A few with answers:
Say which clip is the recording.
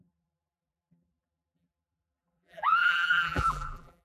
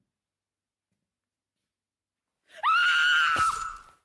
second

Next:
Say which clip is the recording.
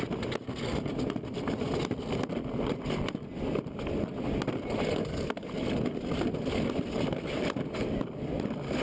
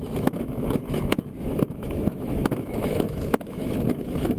first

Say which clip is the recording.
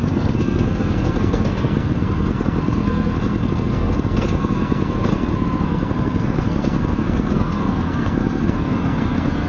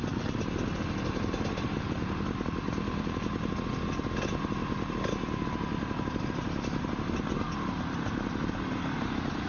second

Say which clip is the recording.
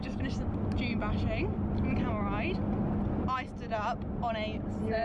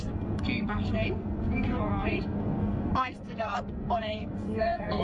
first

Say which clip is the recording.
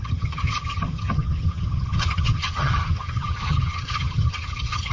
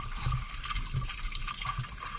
second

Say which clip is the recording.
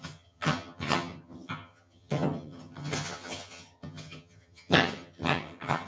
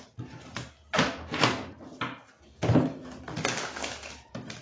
second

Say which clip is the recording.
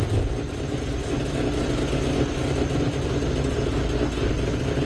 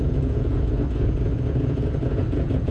first